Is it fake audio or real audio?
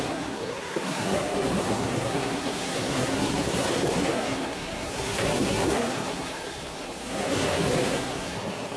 fake